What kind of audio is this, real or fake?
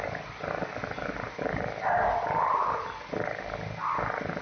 real